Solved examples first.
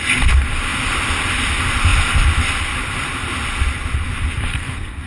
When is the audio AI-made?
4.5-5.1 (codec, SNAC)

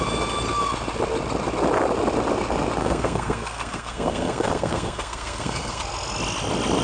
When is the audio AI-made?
2.8-5.8 (codec, SNAC)